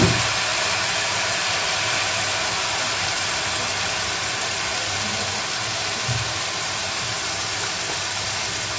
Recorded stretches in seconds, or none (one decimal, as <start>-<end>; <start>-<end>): 0.0-0.5; 2.1-8.8